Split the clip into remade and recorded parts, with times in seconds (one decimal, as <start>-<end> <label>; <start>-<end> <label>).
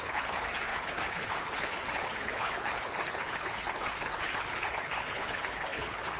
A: 0.0-6.2 remade